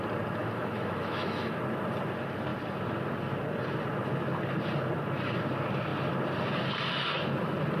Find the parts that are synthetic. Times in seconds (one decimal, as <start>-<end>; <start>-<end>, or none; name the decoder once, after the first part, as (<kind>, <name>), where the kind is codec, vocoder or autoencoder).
0.4-1.6 (autoencoder, DAC-VAE)